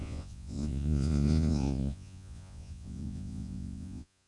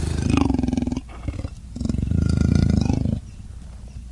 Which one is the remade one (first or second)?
first